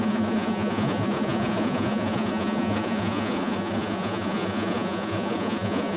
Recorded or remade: remade